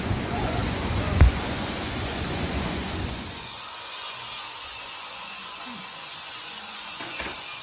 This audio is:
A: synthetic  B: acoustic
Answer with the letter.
A